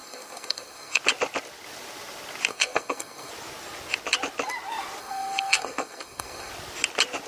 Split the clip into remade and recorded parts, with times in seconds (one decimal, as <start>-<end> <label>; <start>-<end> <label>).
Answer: 0.0-1.0 remade; 1.0-2.5 recorded; 2.5-3.3 remade; 3.3-5.0 recorded; 5.0-6.5 remade; 6.5-7.3 recorded